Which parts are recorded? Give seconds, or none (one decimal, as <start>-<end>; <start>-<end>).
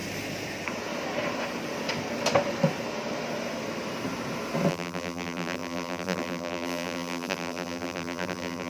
0.0-4.7